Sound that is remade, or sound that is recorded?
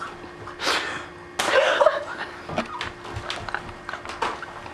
recorded